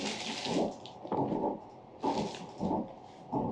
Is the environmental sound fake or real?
real